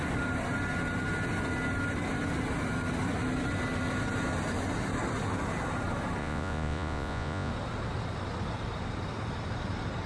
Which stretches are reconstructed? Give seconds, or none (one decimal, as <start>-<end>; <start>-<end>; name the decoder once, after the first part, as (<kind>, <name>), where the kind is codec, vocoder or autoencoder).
6.2-7.5 (vocoder, Vocos)